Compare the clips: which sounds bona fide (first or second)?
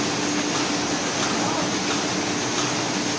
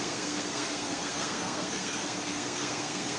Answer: first